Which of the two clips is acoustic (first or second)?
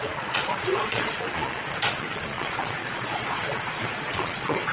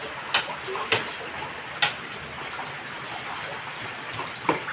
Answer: second